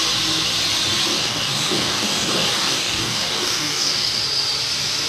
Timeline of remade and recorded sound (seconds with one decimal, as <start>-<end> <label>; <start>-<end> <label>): 0.0-1.1 recorded; 1.1-4.2 remade; 4.2-5.1 recorded